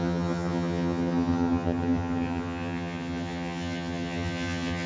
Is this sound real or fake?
fake